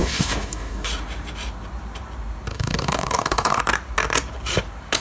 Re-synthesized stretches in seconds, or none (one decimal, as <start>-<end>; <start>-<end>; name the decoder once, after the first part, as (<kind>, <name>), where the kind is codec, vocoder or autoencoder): 0.0-0.9 (codec, DAC); 2.5-3.6